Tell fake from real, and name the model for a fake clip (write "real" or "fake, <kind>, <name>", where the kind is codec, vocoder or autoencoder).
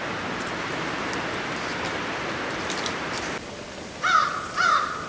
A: fake, vocoder, BigVGAN v2